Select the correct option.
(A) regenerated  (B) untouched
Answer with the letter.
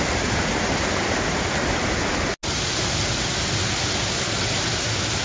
B